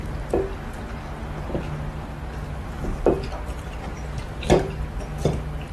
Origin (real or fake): real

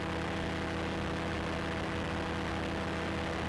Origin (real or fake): real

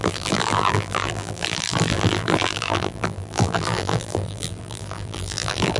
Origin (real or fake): fake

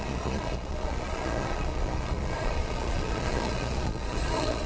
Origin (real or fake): fake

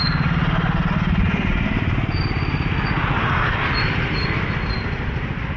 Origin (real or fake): real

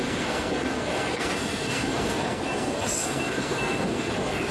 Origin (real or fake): fake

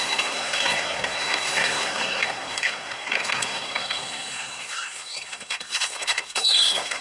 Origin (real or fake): fake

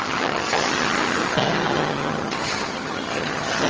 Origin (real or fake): fake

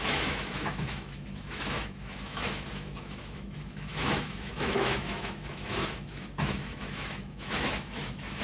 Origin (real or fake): fake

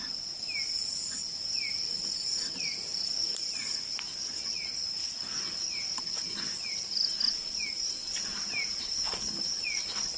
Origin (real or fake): real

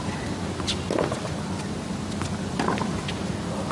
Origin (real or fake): real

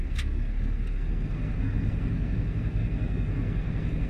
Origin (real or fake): fake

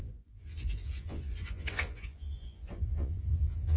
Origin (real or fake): fake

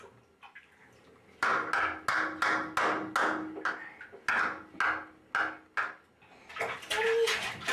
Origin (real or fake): real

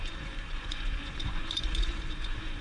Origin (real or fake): fake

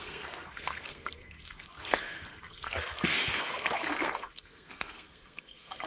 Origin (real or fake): fake